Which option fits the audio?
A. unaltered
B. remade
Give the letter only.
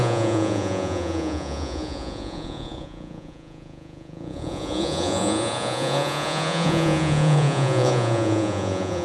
B